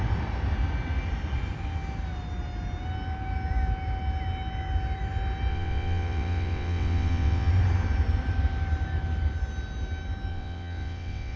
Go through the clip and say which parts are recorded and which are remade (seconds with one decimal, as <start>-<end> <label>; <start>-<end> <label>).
0.0-5.5 recorded; 5.5-7.5 remade; 7.5-10.3 recorded; 10.3-11.4 remade